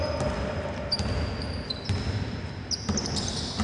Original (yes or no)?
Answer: yes